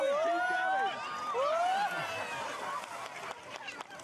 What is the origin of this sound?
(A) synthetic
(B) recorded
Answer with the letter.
B